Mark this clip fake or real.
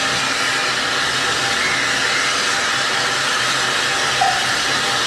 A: real